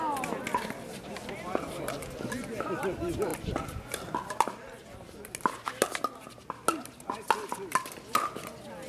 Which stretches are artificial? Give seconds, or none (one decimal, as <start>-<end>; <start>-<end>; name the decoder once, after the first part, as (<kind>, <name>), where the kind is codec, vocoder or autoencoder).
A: none